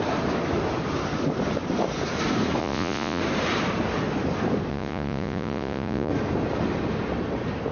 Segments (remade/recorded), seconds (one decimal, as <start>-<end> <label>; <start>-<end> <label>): 0.0-2.6 recorded; 2.6-3.2 remade; 3.2-4.7 recorded; 4.7-6.1 remade; 6.1-7.7 recorded